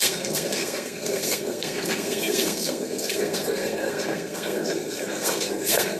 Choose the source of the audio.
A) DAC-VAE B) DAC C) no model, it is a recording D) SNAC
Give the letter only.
D